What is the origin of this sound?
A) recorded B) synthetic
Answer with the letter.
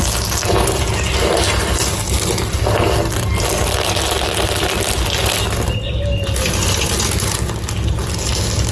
A